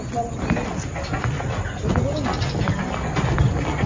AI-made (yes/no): no